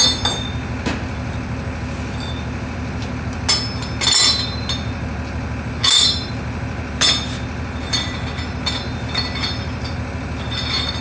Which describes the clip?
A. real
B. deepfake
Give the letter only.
A